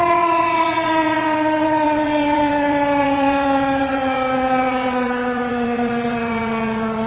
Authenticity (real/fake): fake